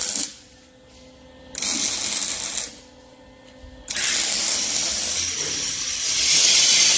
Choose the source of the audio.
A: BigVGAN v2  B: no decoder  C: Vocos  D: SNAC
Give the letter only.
B